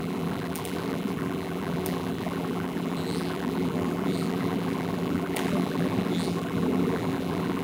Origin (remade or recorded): remade